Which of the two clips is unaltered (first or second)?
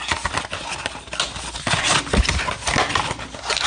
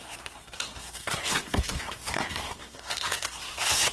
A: first